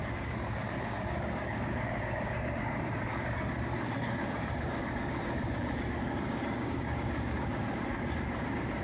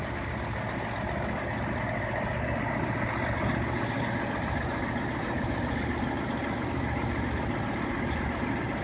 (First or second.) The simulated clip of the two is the first